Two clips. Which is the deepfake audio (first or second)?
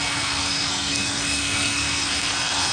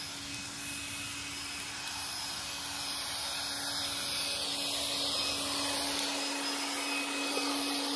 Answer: first